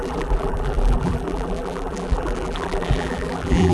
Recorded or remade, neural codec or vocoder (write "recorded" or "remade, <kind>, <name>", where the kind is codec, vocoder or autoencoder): remade, vocoder, BigVGAN v2